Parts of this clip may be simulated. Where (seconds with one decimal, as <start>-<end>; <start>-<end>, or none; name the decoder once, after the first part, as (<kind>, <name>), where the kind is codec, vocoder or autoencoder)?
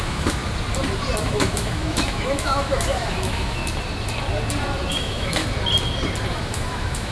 0.0-0.4 (autoencoder, DAC-VAE); 1.2-3.6; 4.9-5.4; 6.3-7.1